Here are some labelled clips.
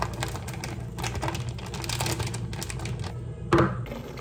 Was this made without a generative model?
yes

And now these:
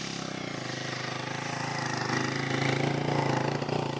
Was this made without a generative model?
yes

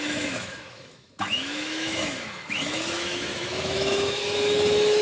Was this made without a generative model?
no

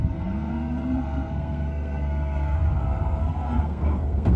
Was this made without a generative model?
no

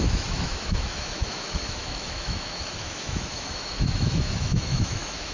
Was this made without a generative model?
no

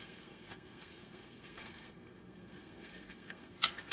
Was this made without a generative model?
no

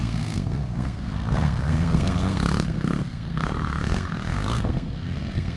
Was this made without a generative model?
no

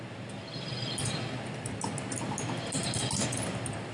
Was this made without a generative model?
yes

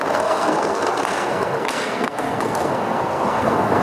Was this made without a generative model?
no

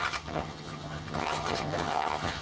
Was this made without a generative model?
no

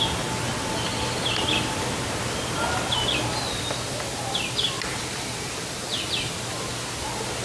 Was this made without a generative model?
yes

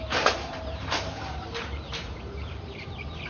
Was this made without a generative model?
no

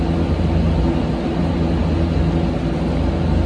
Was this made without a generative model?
yes